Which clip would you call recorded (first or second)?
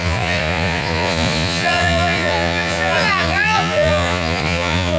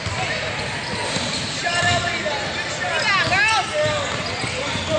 second